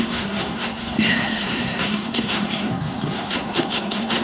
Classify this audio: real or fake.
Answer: fake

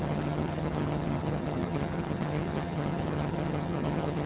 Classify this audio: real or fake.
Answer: fake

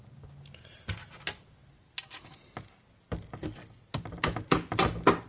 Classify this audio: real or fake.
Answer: real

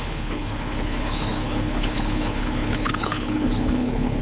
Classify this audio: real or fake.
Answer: fake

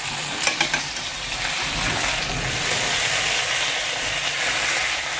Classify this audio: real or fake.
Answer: real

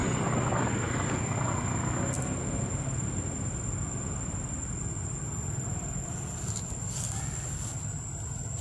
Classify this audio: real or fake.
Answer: real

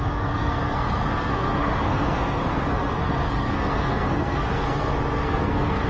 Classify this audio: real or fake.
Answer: fake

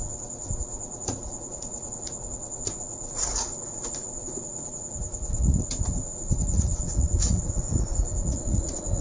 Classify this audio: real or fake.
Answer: fake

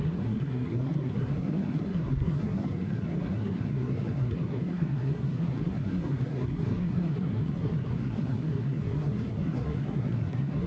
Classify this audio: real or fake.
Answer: fake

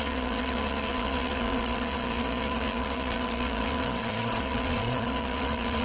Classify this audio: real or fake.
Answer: fake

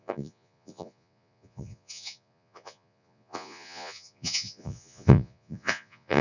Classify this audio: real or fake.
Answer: fake